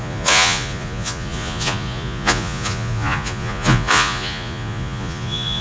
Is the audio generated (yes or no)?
yes